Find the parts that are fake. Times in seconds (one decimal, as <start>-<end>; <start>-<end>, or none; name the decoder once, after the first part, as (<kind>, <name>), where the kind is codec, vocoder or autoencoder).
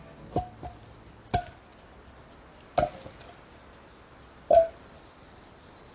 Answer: none